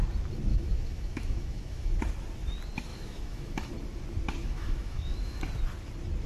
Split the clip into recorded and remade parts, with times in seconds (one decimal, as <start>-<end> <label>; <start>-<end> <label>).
0.0-0.5 recorded; 0.5-1.9 remade; 1.9-2.9 recorded; 2.9-3.7 remade; 3.7-4.4 recorded; 4.4-5.4 remade; 5.4-6.3 recorded